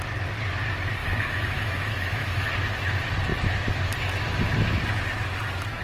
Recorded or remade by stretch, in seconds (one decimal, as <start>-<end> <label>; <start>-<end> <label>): 0.0-1.0 recorded; 1.0-2.5 remade; 2.5-5.8 recorded